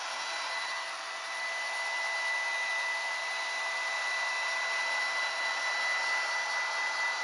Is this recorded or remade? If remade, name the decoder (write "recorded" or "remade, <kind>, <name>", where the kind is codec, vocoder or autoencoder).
recorded